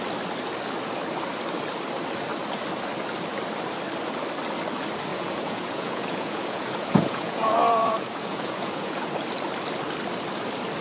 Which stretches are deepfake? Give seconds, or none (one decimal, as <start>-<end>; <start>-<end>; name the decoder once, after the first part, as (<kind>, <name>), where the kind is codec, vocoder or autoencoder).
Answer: 5.1-9.1 (vocoder, Vocos)

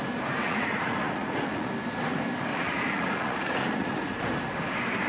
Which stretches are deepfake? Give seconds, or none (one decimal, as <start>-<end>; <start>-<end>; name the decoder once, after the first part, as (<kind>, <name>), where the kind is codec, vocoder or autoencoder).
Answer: 0.4-1.7 (vocoder, Vocos); 2.5-4.2

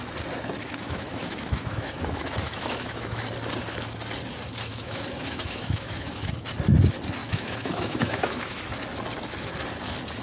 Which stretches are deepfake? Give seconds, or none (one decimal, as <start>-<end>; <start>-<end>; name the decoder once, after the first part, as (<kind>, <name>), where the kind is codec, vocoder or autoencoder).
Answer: 0.6-3.2 (autoencoder, DAC-VAE); 4.7-6.3; 7.2-8.6

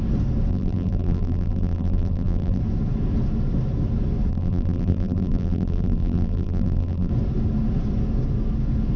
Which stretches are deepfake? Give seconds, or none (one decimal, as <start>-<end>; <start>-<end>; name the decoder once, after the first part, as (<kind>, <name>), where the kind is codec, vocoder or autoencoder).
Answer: 0.5-2.6 (vocoder, BigVGAN v2); 4.3-7.1

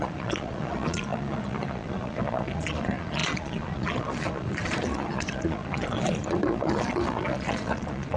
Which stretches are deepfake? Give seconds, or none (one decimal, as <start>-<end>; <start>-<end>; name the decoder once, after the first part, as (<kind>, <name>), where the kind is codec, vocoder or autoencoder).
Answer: 0.0-8.2 (vocoder, Vocos)